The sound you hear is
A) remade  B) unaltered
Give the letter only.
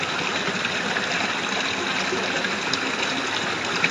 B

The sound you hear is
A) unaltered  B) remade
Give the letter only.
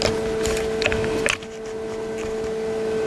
A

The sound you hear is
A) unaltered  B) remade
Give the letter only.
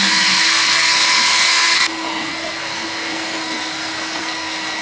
B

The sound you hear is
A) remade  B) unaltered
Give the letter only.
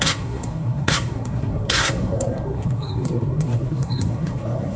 A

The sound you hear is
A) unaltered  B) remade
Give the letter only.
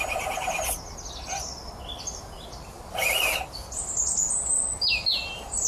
A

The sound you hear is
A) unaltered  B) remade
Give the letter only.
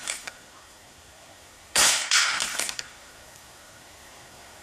B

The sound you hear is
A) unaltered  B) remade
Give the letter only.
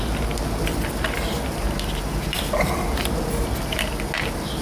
A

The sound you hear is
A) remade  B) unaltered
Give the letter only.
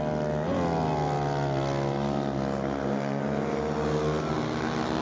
B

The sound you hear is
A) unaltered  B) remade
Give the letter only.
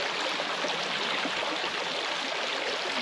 A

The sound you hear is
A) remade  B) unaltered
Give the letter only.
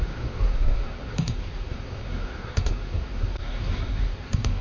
A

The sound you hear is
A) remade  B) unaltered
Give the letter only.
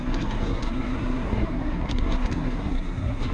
A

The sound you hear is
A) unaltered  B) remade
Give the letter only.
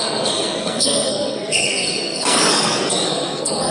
B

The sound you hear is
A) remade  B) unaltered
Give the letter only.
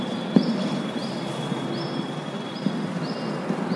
B